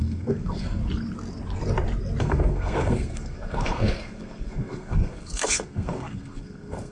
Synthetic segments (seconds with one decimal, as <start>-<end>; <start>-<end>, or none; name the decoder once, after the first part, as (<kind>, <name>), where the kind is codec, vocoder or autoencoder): 0.0-0.8 (codec, SNAC); 2.2-6.9